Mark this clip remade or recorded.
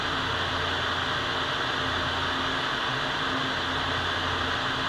recorded